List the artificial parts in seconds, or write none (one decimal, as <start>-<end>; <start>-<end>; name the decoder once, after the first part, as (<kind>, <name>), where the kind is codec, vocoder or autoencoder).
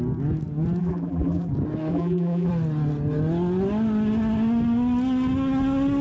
0.8-1.5 (vocoder, BigVGAN v2); 1.9-2.5